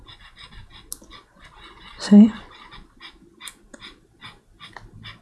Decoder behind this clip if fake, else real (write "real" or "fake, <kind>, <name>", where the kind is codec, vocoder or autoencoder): real